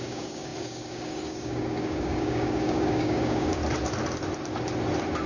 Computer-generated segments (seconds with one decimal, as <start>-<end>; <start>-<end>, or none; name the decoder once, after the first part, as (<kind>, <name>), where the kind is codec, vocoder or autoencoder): 0.0-3.6 (codec, DAC)